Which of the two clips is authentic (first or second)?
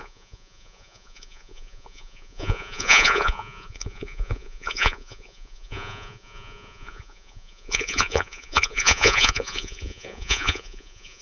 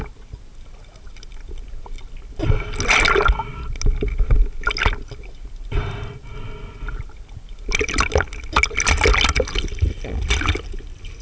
second